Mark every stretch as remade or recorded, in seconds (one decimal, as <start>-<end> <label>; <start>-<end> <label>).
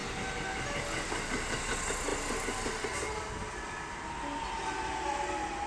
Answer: 0.0-5.7 recorded